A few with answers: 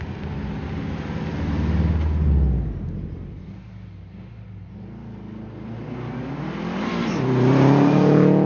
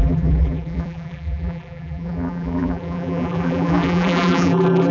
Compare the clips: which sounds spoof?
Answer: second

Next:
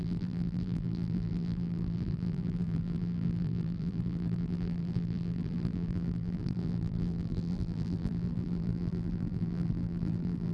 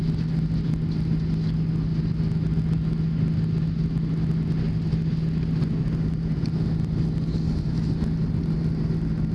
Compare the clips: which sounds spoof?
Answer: first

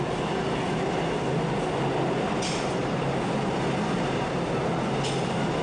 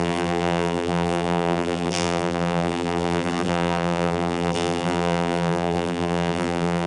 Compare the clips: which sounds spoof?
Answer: second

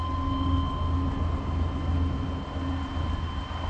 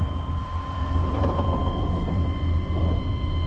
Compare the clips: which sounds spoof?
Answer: second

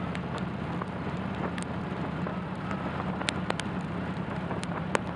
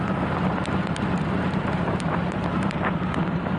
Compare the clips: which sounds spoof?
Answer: second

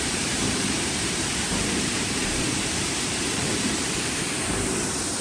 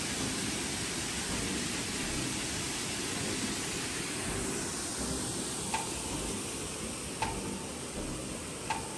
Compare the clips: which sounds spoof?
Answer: first